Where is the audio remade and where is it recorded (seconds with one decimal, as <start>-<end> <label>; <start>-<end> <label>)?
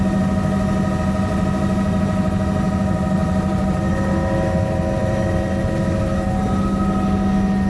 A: 0.0-3.2 recorded; 3.2-3.9 remade; 3.9-5.0 recorded; 5.0-5.5 remade; 5.5-7.7 recorded